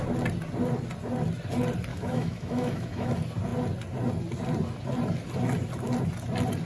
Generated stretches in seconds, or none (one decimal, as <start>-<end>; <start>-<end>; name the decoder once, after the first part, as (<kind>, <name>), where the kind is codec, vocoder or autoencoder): 1.9-3.1 (autoencoder, DAC-VAE)